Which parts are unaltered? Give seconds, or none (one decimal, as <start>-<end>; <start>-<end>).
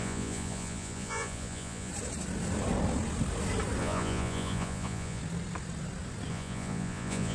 1.9-3.8; 5.2-6.3